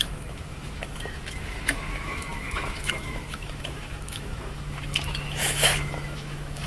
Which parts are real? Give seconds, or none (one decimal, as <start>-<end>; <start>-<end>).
none